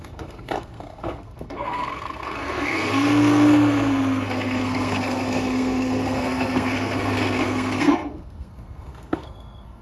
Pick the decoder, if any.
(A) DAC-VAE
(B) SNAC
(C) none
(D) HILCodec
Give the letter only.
B